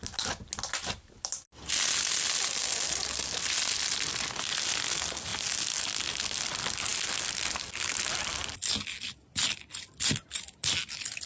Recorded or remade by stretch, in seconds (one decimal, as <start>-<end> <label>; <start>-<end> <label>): 0.0-11.3 recorded